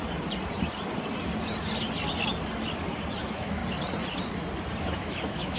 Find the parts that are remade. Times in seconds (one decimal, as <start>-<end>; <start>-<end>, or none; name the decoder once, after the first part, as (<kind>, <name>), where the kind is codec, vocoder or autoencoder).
3.2-3.6 (autoencoder, DAC-VAE); 4.8-5.6